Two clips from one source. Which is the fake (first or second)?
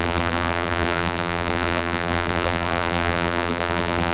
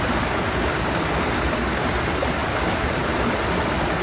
first